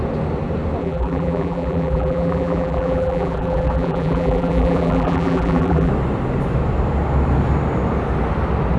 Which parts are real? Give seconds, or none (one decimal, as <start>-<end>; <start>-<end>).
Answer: 0.0-0.8; 5.9-8.8